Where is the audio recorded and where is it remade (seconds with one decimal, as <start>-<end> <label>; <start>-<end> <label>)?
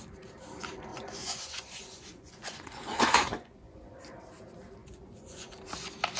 0.0-0.9 recorded; 0.9-4.0 remade; 4.0-4.8 recorded; 4.8-5.6 remade; 5.6-6.2 recorded